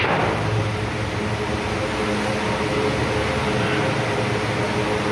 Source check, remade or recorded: recorded